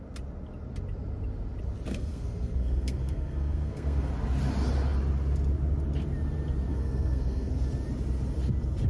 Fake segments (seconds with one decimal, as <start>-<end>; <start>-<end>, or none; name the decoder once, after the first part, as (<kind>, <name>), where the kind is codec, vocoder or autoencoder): 1.9-4.1 (codec, SNAC); 6.7-7.5